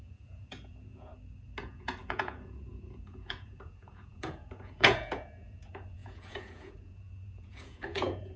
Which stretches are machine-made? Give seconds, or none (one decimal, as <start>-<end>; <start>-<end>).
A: 0.0-1.1; 1.6-8.4